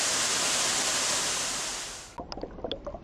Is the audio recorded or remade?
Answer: recorded